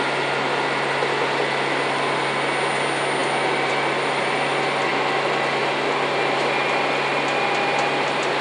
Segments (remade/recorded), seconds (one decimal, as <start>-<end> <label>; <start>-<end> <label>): 0.0-8.4 recorded